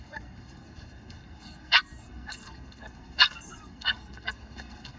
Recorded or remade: remade